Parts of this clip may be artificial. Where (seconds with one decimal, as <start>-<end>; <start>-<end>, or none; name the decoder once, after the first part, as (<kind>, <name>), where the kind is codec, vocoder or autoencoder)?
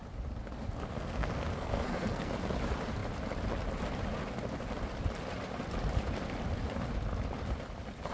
0.9-2.3 (codec, SNAC)